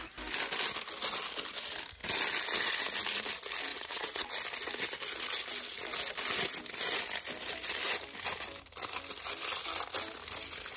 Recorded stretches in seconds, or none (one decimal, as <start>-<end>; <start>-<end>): 0.0-3.7; 4.3-10.8